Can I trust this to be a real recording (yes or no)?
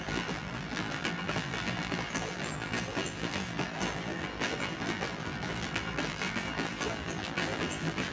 no